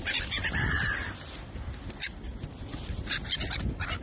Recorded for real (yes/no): yes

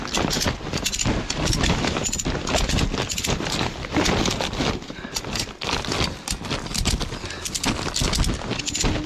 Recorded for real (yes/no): yes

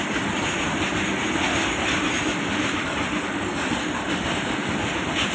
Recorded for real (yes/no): yes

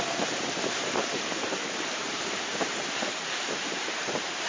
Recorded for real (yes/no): no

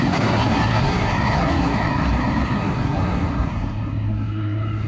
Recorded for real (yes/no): no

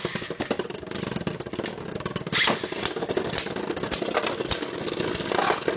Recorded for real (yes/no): yes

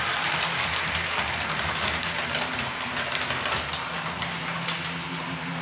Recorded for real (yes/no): yes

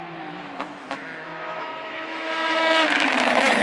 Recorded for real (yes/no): no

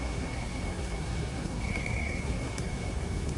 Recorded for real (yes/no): no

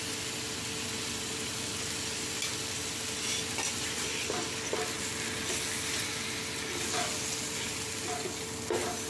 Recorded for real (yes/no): yes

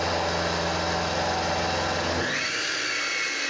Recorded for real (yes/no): yes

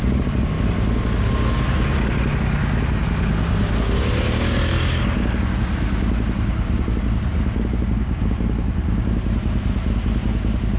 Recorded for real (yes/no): yes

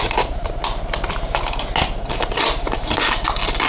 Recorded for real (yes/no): yes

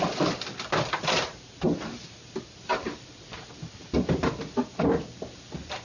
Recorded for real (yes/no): yes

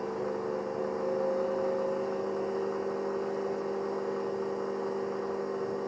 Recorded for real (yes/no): yes